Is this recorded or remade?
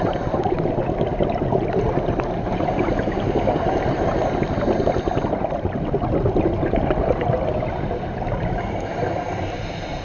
recorded